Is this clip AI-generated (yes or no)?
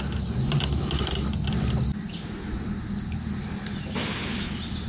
no